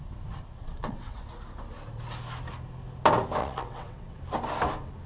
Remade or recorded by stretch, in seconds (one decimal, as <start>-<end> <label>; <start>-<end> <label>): 0.0-0.6 recorded; 0.6-1.2 remade; 1.2-3.4 recorded; 3.4-4.2 remade; 4.2-5.1 recorded